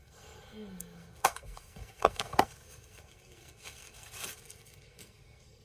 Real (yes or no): no